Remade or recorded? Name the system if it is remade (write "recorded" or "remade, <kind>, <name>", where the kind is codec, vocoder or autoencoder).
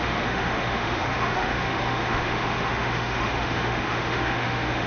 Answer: remade, autoencoder, DAC-VAE